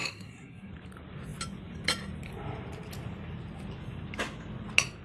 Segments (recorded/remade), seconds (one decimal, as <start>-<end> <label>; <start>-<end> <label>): 0.0-0.7 remade; 0.7-5.0 recorded